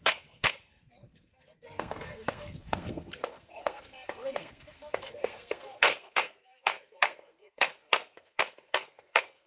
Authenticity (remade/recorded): remade